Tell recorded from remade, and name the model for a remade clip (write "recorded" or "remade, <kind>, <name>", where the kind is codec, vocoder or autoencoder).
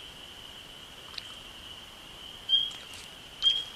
recorded